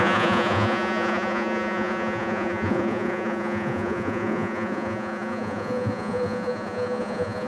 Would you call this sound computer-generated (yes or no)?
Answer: yes